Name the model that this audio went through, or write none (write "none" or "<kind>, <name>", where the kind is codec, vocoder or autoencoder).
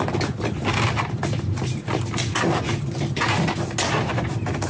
none